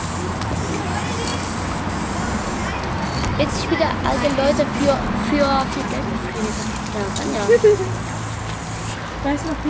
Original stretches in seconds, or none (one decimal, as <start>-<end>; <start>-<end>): 0.0-9.7